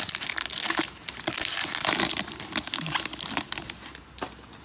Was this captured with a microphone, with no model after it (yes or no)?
yes